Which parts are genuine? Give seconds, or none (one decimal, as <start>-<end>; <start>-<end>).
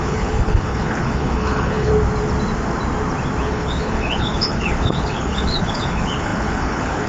1.9-3.4